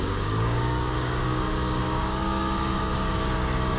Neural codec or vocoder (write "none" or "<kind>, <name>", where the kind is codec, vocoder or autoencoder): codec, DAC